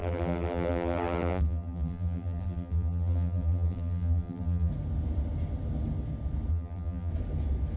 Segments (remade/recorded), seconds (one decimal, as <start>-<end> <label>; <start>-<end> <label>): 0.0-4.7 remade; 4.7-6.5 recorded; 6.5-7.1 remade; 7.1-7.8 recorded